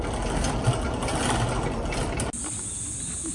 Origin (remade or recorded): recorded